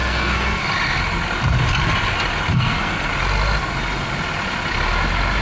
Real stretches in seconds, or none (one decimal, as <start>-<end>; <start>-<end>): 0.6-2.5; 3.1-5.4